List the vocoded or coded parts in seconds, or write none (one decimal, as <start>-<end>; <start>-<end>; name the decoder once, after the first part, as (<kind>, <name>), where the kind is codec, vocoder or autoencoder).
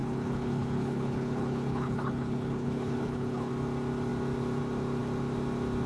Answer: 0.0-3.5 (codec, HILCodec)